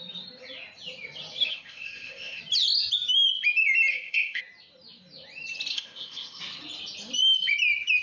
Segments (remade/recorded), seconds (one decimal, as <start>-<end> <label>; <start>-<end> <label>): 0.0-1.5 recorded; 1.5-2.4 remade; 2.4-3.9 recorded; 3.9-4.4 remade; 4.4-5.7 recorded; 5.7-6.4 remade; 6.4-8.0 recorded